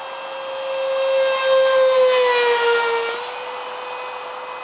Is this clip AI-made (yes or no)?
no